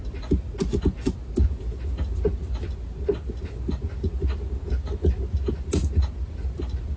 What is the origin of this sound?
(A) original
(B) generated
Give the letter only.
A